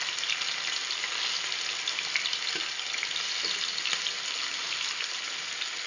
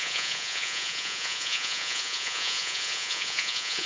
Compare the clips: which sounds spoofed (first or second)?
second